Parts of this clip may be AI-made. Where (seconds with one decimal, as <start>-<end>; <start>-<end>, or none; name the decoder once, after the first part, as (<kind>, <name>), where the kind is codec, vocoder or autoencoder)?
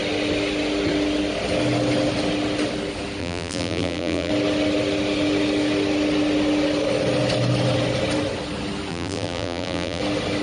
3.2-4.3 (vocoder, BigVGAN v2); 8.9-10.0